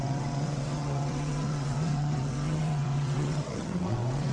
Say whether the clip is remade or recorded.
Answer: remade